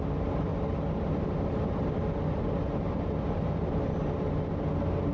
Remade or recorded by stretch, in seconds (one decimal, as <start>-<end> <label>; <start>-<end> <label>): 0.0-5.1 recorded